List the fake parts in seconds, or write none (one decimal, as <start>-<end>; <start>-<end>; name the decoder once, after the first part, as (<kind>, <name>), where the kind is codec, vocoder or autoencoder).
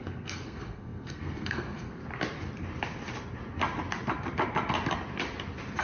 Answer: 0.0-2.0 (codec, SNAC)